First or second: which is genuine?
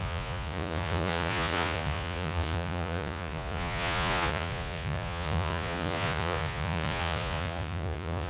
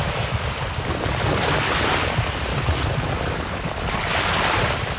second